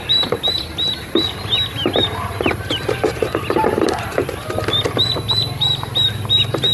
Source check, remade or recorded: recorded